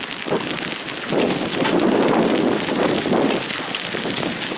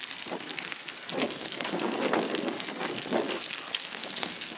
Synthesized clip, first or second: second